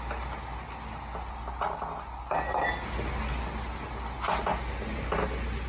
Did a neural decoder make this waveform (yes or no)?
no